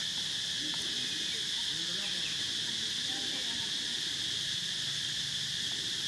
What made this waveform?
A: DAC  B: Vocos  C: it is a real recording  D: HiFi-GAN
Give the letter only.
C